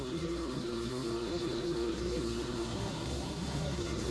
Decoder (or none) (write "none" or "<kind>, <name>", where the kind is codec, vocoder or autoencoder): codec, SNAC